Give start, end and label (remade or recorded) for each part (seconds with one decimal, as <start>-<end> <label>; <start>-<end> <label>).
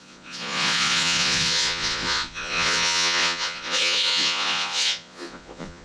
0.0-5.8 remade